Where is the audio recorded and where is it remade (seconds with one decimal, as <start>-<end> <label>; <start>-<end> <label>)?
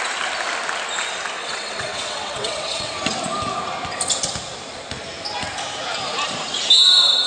0.0-1.4 recorded; 1.4-2.9 remade; 2.9-7.3 recorded